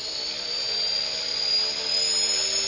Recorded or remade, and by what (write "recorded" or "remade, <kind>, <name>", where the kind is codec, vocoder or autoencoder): recorded